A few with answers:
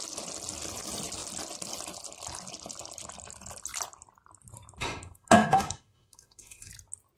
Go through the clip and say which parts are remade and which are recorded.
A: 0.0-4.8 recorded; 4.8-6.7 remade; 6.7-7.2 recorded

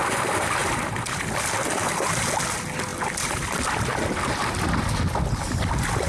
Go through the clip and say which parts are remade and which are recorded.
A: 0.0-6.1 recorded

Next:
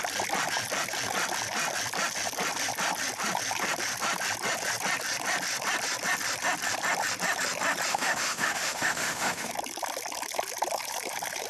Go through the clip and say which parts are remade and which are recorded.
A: 0.0-7.9 recorded; 7.9-9.5 remade; 9.5-11.5 recorded

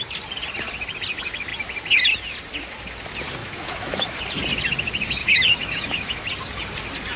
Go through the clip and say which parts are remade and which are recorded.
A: 0.0-3.4 recorded; 3.4-4.2 remade; 4.2-5.2 recorded; 5.2-6.3 remade; 6.3-7.2 recorded